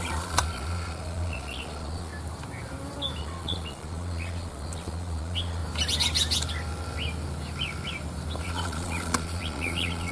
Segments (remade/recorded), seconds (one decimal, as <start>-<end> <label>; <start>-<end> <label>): 0.0-2.1 remade; 2.1-3.2 recorded; 3.2-5.6 remade; 5.6-8.4 recorded; 8.4-10.1 remade